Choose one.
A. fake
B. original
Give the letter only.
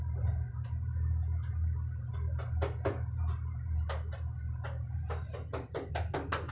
B